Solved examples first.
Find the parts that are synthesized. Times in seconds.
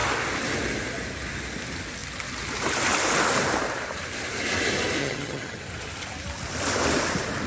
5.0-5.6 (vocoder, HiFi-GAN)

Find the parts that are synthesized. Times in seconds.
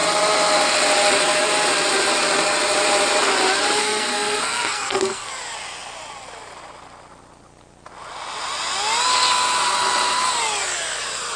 3.8-5.3 (codec, SNAC)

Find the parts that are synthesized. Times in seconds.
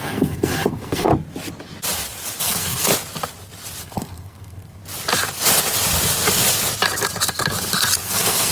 0.0-1.1 (codec, SNAC); 2.4-2.9; 3.8-4.8; 8.0-8.5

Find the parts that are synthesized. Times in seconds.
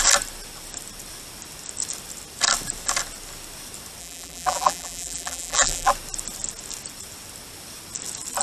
4.0-5.9 (vocoder, BigVGAN v2)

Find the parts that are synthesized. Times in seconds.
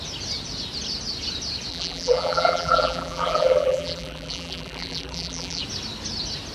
1.7-5.6 (vocoder, BigVGAN v2)